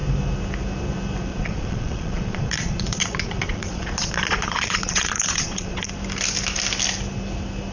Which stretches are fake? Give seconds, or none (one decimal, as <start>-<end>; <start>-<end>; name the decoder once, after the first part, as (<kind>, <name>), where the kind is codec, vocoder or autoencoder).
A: 1.3-5.9 (vocoder, Vocos)